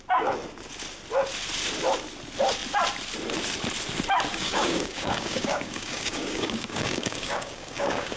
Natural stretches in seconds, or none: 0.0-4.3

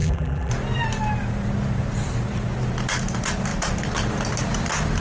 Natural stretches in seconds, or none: 0.5-5.0

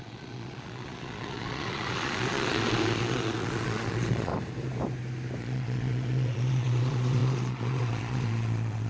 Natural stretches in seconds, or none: 4.3-5.4

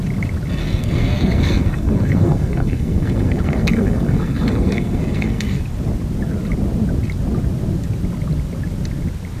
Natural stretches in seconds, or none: 0.0-0.6; 5.6-9.4

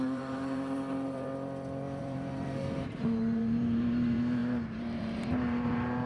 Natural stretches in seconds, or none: 1.3-2.0

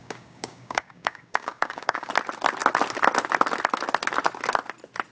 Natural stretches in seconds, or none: 2.1-5.1

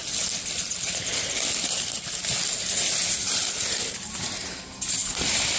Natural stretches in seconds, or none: 0.0-5.6